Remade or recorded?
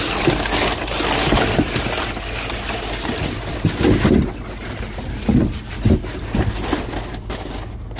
recorded